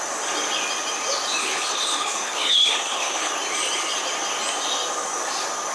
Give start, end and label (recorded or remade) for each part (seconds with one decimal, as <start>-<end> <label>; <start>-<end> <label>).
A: 0.0-1.4 recorded; 1.4-3.3 remade; 3.3-5.7 recorded